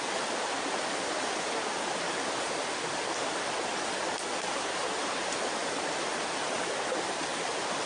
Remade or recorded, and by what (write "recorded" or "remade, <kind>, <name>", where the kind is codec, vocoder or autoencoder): recorded